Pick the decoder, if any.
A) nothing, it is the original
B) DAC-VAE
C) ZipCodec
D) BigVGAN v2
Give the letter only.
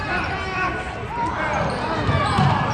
A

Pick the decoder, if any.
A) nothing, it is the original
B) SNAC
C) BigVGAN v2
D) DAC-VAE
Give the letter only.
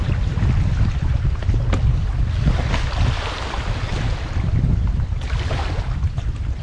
A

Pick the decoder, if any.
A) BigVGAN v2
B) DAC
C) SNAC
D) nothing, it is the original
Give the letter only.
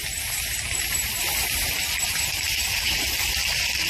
D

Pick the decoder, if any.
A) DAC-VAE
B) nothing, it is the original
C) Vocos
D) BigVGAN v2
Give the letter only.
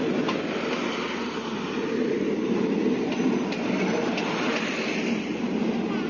B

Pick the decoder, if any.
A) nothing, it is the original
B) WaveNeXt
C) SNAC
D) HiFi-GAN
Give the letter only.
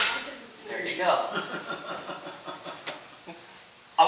A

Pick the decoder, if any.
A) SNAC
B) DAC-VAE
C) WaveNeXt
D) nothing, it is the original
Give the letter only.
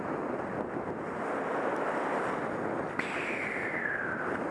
D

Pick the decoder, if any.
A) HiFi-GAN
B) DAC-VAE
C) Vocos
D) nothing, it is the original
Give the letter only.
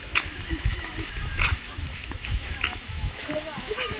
B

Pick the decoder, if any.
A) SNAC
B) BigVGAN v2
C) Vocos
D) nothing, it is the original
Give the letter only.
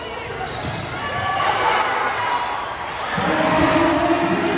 D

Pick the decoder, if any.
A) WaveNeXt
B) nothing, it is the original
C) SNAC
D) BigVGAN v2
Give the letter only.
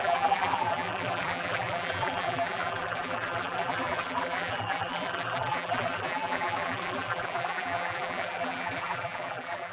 D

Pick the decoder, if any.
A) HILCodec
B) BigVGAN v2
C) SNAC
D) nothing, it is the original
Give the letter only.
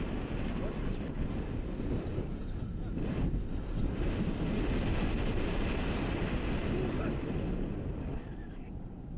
B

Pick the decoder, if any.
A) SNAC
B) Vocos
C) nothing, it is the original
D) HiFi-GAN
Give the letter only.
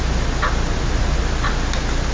C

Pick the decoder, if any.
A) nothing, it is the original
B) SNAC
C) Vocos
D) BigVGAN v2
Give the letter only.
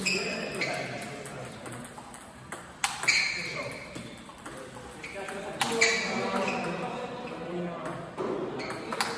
A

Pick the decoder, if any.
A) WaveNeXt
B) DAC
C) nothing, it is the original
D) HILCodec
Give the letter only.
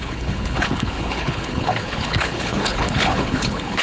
D